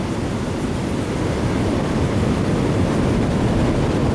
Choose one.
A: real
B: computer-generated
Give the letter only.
A